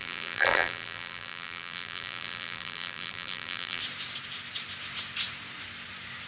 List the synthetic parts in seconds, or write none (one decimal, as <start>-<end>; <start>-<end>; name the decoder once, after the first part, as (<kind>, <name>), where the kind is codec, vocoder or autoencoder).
0.0-3.8 (vocoder, BigVGAN v2)